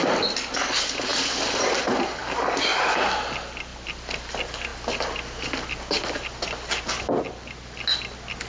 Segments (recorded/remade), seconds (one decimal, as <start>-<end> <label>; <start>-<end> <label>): 0.0-8.5 recorded